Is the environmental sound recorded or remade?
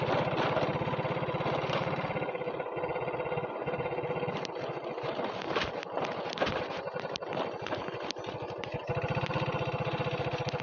recorded